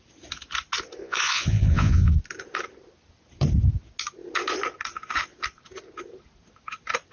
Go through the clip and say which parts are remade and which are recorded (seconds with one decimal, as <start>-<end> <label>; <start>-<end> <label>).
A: 0.0-1.0 recorded; 1.0-2.2 remade; 2.2-7.1 recorded